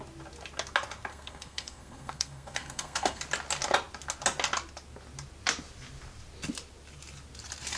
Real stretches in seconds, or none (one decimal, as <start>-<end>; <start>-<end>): 0.0-1.1; 3.2-7.8